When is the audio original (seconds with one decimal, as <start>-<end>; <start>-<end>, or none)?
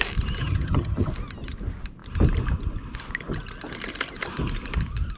0.0-0.4; 1.1-5.2